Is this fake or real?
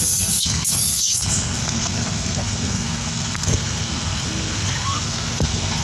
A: fake